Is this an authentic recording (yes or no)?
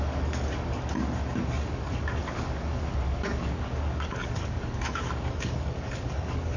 no